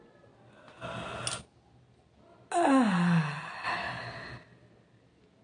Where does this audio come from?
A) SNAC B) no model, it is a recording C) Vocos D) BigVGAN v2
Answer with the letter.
B